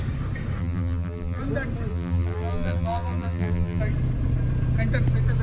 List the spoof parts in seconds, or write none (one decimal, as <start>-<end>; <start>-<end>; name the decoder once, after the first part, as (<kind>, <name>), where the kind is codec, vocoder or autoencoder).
0.6-1.4 (vocoder, BigVGAN v2); 1.9-3.8